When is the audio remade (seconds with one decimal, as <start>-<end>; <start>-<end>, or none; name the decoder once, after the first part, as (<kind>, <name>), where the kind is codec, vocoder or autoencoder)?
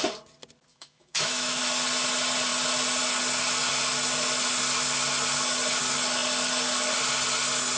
0.7-1.6 (autoencoder, DAC-VAE)